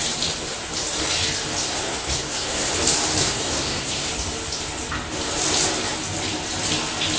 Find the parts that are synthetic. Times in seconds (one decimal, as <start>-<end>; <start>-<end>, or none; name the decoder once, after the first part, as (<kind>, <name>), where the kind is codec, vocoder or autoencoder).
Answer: 1.6-2.7 (codec, SNAC); 3.2-4.1